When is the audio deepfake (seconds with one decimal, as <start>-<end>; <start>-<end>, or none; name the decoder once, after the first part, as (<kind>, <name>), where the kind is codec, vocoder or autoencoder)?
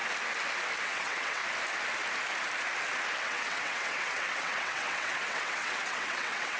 0.8-1.4 (vocoder, WaveNeXt); 3.2-6.6